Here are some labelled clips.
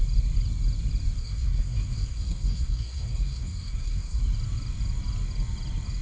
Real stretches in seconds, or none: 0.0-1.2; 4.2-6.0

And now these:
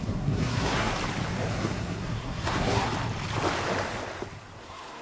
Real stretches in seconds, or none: 0.9-1.5; 2.9-4.6

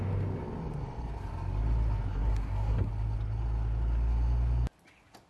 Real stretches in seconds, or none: 0.0-2.1; 2.9-5.3

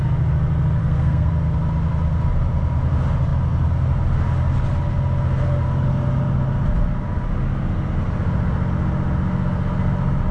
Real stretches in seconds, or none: 0.0-0.8; 1.3-10.3

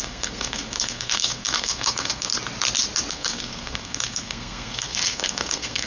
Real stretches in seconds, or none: 2.3-3.1

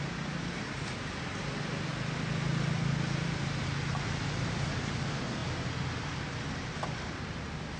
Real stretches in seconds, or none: 0.0-7.8

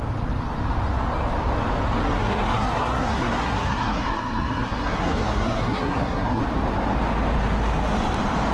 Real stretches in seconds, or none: 0.0-2.0; 6.4-8.5

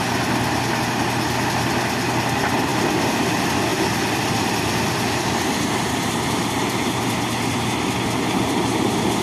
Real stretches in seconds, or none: 0.0-9.2